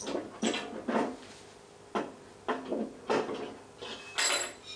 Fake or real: real